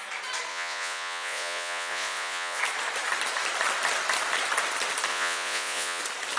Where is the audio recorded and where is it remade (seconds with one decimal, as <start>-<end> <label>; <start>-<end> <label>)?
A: 0.0-0.5 recorded; 0.5-2.6 remade; 2.6-5.1 recorded; 5.1-6.0 remade; 6.0-6.4 recorded